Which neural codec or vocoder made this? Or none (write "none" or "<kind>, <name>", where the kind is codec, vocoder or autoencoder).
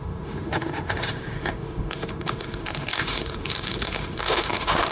autoencoder, DAC-VAE